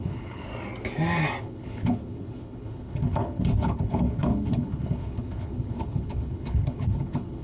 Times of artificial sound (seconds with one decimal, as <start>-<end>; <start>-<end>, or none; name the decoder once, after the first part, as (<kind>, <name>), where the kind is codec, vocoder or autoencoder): 0.0-0.5 (codec, HILCodec); 1.4-7.4